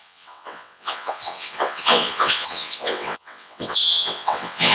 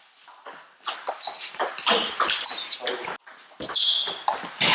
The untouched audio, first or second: second